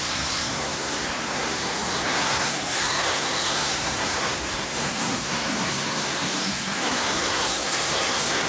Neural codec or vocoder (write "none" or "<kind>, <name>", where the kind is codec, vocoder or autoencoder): codec, SNAC